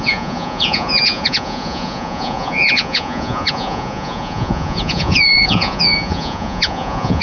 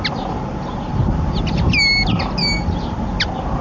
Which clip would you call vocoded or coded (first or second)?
first